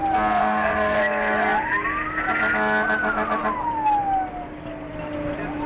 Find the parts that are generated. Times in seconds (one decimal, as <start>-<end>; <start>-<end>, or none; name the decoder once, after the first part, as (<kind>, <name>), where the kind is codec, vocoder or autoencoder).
0.4-1.0 (codec, SNAC)